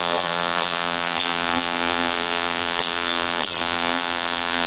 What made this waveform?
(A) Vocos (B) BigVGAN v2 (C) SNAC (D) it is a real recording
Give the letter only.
B